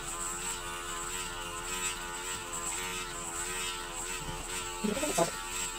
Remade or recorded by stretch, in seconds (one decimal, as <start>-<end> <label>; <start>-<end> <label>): 0.0-5.8 recorded